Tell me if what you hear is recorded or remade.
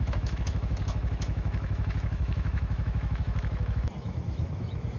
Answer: remade